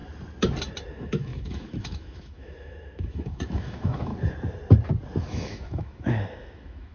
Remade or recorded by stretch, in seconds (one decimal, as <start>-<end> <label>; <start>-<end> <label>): 0.0-0.9 recorded; 0.9-4.1 remade; 4.1-5.2 recorded; 5.2-6.9 remade